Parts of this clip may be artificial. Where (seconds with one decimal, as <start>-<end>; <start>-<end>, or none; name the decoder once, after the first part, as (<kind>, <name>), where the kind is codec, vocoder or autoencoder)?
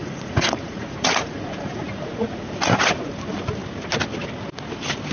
0.0-3.1 (vocoder, Vocos)